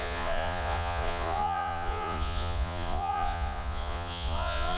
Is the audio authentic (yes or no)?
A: no